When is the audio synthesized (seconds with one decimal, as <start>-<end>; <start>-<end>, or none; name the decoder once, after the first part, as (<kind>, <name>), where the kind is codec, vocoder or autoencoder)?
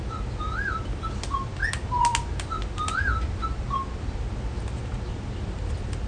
none